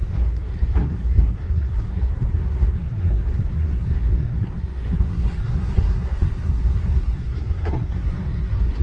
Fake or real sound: fake